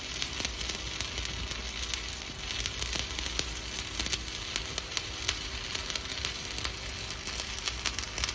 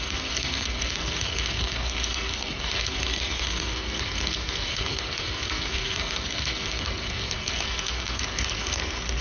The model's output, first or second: second